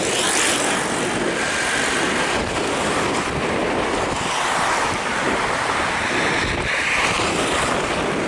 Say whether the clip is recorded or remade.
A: remade